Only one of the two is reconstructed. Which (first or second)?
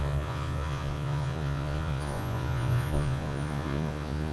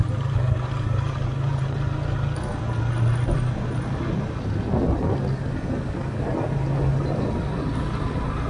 first